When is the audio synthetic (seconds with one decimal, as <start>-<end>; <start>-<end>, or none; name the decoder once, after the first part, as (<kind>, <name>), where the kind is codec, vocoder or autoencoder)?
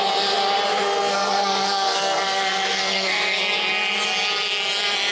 0.7-3.4 (codec, SNAC)